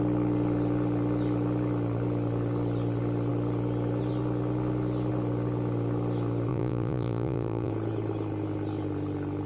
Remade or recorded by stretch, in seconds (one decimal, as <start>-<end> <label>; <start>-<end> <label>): 0.0-6.5 recorded; 6.5-7.7 remade; 7.7-9.5 recorded